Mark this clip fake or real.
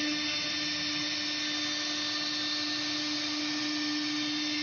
real